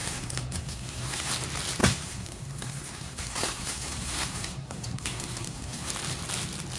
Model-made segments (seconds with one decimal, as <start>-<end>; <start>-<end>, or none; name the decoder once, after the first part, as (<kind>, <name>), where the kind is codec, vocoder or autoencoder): 0.0-1.3 (codec, SNAC); 1.8-5.9